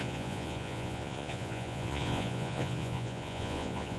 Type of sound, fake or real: fake